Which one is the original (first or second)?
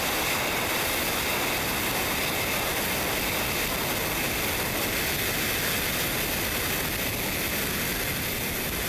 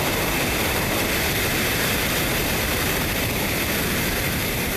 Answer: first